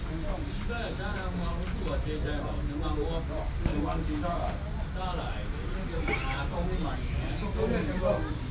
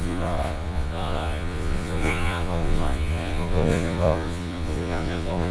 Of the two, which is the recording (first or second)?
first